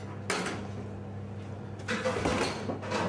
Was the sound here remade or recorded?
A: recorded